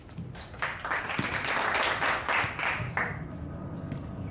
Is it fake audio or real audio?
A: real